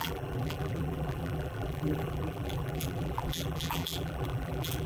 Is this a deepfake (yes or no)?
yes